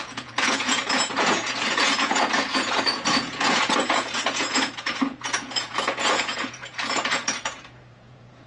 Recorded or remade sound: remade